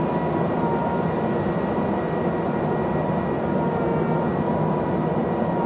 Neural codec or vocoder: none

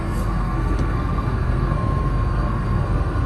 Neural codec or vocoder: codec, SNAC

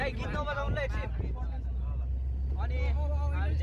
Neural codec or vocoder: none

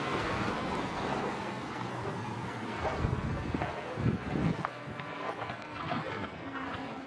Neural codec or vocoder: codec, SNAC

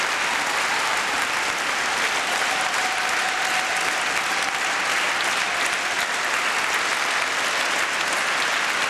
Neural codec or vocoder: none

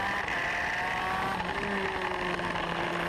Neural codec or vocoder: none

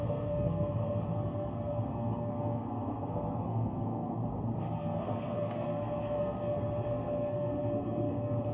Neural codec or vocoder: codec, SNAC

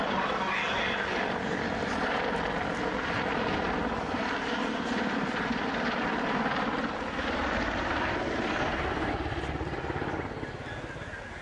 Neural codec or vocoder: none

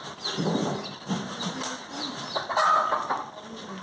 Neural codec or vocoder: none